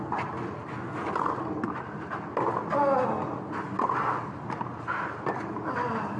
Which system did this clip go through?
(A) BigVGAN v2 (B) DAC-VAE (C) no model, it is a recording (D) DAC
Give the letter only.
C